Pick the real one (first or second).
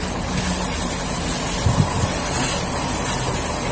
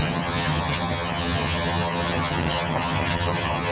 first